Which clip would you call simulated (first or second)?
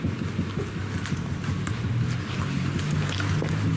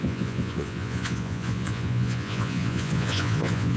second